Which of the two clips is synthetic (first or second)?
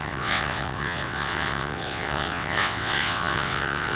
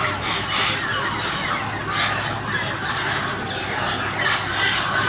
first